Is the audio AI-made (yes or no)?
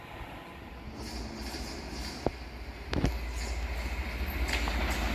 no